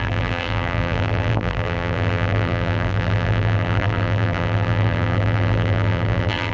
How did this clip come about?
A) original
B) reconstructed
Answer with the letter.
B